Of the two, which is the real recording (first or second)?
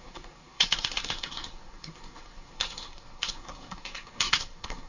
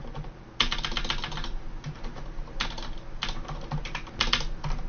second